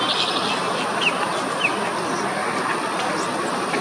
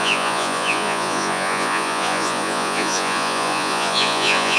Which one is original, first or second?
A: first